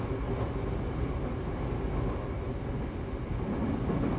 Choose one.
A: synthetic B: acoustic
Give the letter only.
B